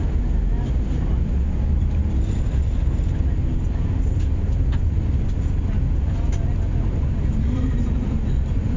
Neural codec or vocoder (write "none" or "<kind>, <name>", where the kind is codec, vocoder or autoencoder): none